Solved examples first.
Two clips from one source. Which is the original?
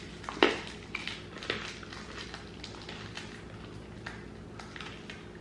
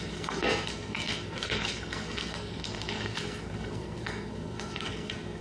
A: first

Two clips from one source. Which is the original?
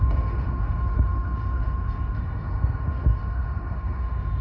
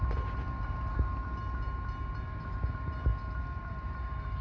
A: second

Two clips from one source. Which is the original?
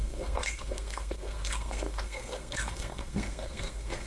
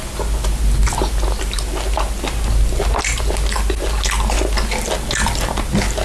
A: second